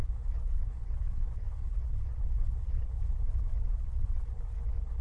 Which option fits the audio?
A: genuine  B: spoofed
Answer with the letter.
B